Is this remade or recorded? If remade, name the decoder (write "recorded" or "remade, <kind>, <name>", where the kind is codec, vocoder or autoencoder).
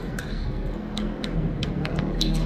remade, codec, SNAC